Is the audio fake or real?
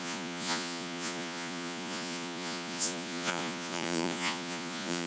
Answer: fake